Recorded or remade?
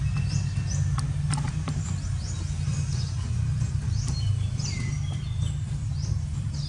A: recorded